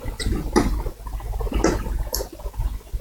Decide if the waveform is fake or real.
real